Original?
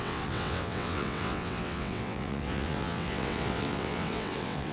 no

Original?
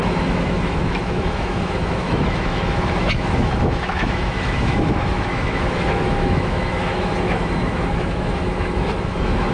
no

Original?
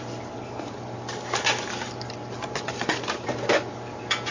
yes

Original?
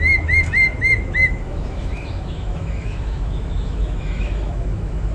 no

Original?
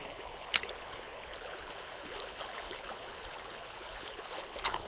no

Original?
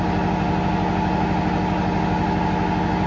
yes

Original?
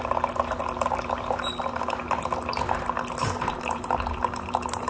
yes